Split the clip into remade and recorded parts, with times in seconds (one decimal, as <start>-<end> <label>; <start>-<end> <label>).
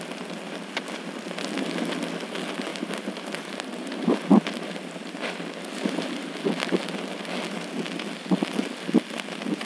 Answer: 0.0-9.7 recorded